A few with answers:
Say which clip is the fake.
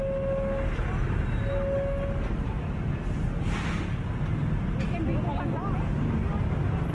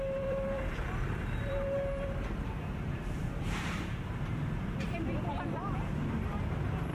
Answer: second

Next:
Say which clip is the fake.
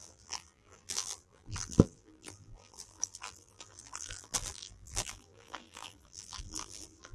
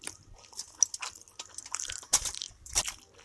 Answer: first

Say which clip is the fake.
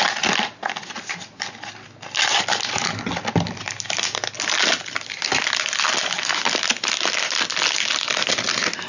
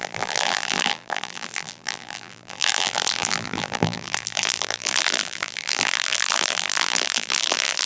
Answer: second